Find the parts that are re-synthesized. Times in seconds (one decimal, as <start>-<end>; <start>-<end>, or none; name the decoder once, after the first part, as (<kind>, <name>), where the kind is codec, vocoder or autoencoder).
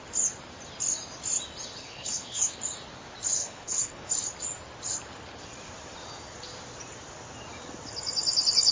1.8-2.6 (codec, HILCodec); 3.4-4.1